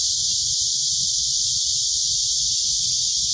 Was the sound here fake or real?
real